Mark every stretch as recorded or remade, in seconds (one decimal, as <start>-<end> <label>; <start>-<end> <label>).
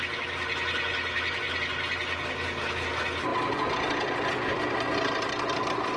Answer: 0.0-3.3 recorded; 3.3-6.0 remade